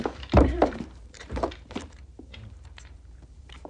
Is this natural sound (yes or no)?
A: no